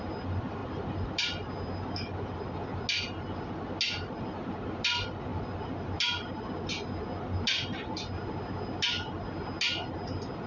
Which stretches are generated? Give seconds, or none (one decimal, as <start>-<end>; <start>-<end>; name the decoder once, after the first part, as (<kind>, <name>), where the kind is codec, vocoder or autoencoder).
none